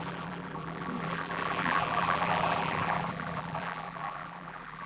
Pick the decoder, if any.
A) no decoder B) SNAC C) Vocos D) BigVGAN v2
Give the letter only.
D